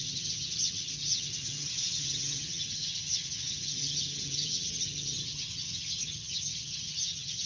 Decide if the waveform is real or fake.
fake